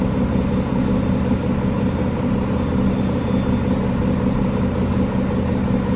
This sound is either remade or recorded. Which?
recorded